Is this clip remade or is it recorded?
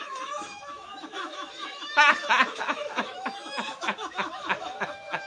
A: remade